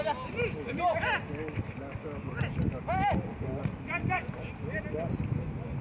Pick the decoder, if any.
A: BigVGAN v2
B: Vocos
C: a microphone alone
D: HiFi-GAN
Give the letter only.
C